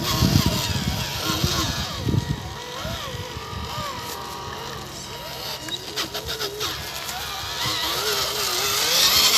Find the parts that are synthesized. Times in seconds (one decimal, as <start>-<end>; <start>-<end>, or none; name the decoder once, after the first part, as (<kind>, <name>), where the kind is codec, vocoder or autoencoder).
1.5-2.0 (vocoder, Vocos)